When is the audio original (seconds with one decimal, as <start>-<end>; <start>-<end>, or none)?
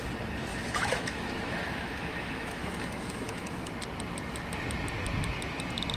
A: 0.0-0.5; 3.7-6.0